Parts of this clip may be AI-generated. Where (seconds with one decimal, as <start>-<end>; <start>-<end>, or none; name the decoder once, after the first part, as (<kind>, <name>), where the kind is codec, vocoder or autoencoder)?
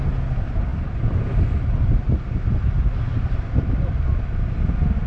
none